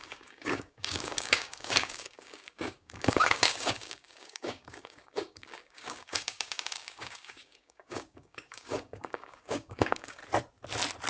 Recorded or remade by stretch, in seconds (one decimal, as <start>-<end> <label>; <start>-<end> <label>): 0.0-10.2 remade; 10.2-11.1 recorded